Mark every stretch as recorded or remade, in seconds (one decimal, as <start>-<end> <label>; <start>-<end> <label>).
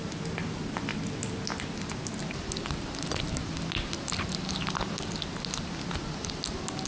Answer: 0.0-6.9 recorded